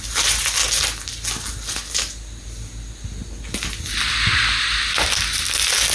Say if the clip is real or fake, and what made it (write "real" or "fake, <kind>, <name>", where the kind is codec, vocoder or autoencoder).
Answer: real